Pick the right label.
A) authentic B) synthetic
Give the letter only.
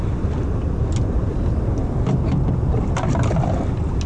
A